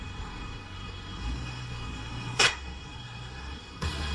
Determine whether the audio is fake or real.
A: fake